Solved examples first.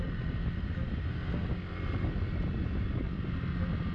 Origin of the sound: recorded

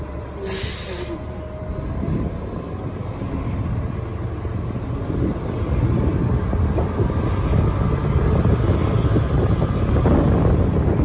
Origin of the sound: recorded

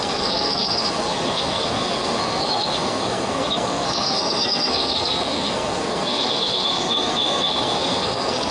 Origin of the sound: remade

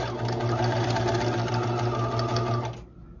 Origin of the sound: recorded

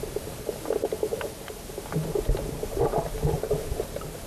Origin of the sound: recorded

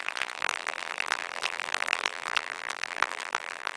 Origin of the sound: remade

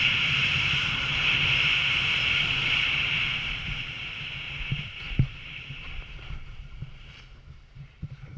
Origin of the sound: remade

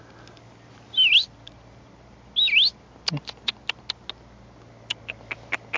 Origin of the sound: recorded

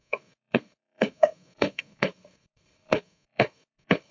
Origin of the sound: remade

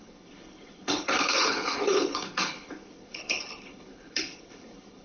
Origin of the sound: remade